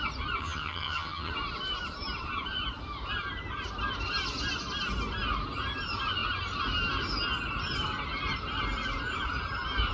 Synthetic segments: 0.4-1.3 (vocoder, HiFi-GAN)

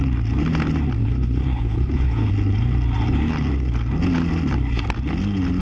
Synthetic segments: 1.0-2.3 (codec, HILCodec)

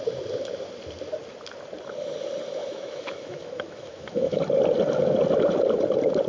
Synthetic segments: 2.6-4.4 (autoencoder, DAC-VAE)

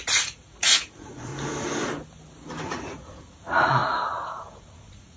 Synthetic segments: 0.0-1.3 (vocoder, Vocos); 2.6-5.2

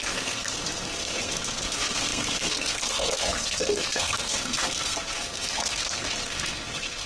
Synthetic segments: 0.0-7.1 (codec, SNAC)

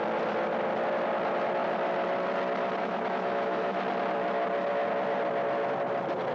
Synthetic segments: 2.8-3.8 (autoencoder, DAC-VAE)

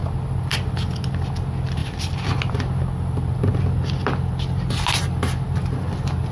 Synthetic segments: none

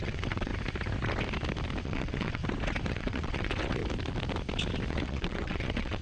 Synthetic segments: 0.0-0.5 (vocoder, WaveNeXt); 1.8-2.4; 2.9-3.8; 4.9-6.0